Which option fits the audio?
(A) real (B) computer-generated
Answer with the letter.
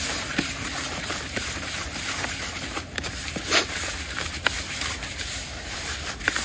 B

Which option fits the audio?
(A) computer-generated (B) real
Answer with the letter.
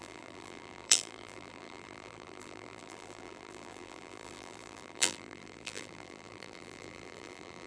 A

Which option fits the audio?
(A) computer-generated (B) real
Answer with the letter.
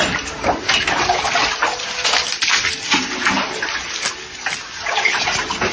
B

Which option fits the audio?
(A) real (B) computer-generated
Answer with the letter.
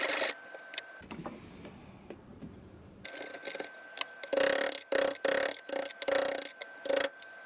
A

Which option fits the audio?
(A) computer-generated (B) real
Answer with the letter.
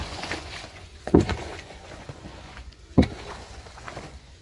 A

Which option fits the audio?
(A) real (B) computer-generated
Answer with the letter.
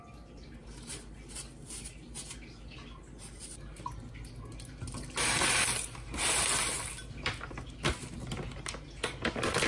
A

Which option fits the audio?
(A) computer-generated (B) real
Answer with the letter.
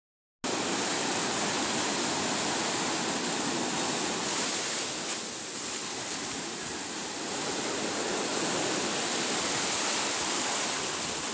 B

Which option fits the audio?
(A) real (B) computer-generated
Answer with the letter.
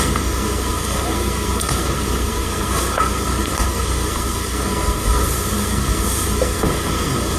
B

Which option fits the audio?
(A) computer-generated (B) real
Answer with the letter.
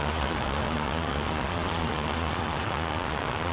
A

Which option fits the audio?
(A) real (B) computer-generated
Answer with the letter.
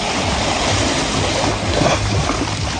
A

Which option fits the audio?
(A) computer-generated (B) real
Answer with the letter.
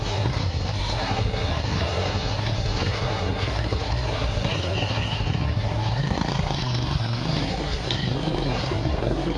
A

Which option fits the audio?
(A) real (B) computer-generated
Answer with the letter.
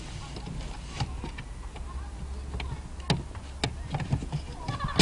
A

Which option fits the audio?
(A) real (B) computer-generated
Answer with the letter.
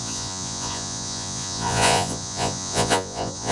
B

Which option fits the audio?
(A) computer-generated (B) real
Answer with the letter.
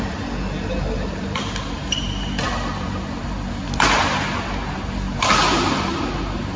B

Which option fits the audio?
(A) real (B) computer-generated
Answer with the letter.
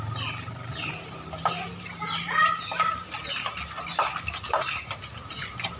A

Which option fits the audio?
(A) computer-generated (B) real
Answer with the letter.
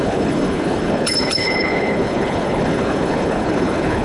A